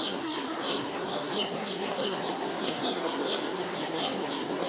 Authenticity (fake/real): fake